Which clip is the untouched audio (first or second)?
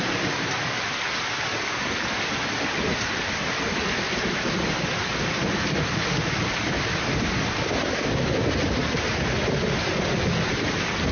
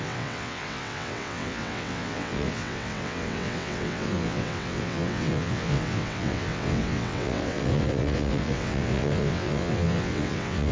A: first